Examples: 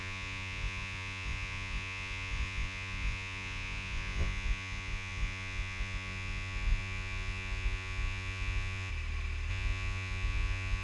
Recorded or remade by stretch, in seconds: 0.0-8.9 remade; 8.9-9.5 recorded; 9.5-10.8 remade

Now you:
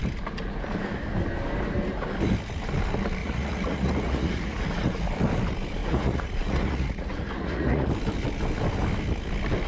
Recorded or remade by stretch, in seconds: 0.0-3.2 recorded; 3.2-5.1 remade; 5.1-5.8 recorded; 5.8-7.9 remade; 7.9-9.7 recorded

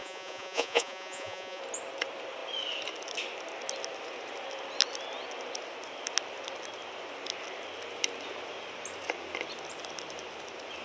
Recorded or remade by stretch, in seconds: 0.0-1.6 remade; 1.6-10.8 recorded

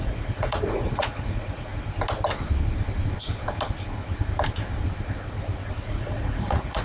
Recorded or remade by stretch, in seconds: 0.0-1.7 remade; 1.7-5.8 recorded; 5.8-6.8 remade

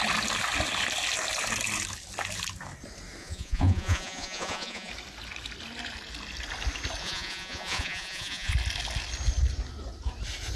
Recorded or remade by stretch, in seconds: 0.0-3.2 recorded; 3.2-4.9 remade; 4.9-7.0 recorded; 7.0-8.5 remade; 8.5-10.6 recorded

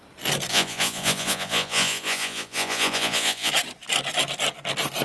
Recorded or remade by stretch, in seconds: 0.0-0.5 recorded; 0.5-3.5 remade; 3.5-5.0 recorded

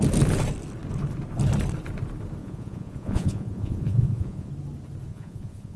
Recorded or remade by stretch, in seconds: 0.0-2.4 recorded; 2.4-4.5 remade; 4.5-5.1 recorded; 5.1-5.8 remade